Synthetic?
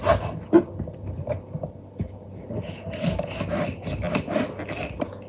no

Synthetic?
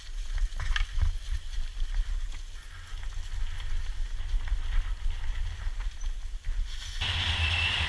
no